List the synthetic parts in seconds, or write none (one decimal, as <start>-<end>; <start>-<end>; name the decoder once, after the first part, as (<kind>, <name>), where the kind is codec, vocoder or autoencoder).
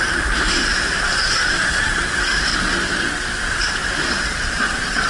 0.0-2.5 (vocoder, BigVGAN v2); 3.4-5.1